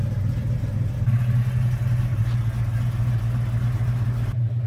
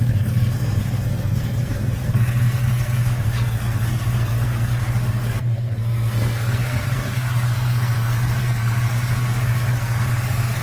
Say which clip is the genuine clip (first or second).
first